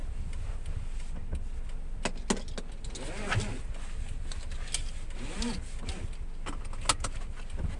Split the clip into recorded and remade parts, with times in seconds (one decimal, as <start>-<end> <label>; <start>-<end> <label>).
0.0-7.8 recorded